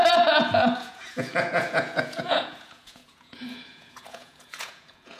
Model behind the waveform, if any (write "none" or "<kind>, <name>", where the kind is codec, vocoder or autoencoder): vocoder, Vocos